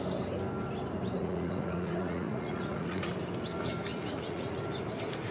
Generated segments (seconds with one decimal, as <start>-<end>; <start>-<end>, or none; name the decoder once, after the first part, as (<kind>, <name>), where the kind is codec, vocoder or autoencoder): 1.2-3.1 (vocoder, Vocos); 3.9-4.6